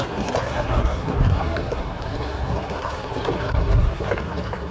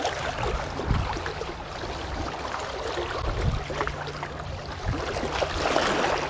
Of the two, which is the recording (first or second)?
second